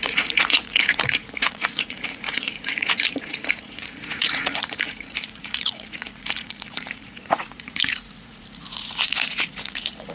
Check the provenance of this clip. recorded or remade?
remade